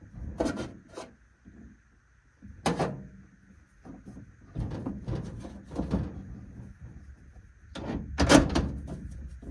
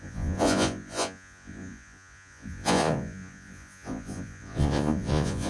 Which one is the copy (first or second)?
second